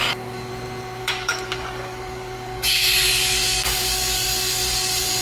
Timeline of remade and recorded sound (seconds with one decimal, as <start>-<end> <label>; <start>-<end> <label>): 0.0-0.5 remade; 0.5-1.0 recorded; 1.0-5.2 remade